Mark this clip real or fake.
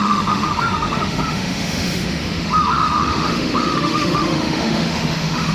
fake